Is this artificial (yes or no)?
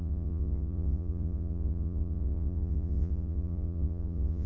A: yes